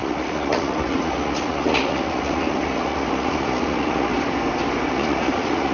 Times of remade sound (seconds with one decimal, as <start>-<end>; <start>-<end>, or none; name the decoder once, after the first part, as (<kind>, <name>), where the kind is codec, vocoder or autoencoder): 0.0-4.1 (vocoder, Vocos); 4.9-5.7